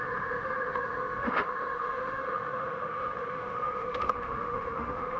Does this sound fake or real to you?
fake